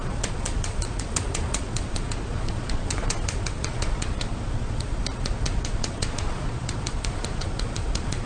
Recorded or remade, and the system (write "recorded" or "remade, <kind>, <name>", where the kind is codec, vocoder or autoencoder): remade, vocoder, Vocos